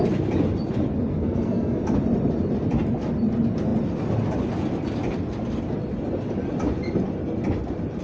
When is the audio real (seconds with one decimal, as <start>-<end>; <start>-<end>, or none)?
0.0-1.1; 1.8-8.0